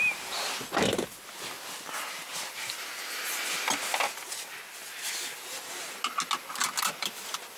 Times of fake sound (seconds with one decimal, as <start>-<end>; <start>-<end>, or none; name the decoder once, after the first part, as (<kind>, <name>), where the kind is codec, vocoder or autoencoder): none